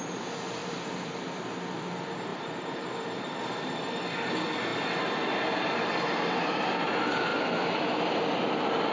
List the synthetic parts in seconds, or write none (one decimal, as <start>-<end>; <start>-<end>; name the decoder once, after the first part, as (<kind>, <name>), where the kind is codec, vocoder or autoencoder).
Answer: 0.6-1.2 (vocoder, BigVGAN v2); 2.3-3.7